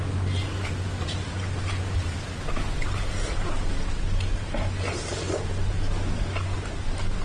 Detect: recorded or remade recorded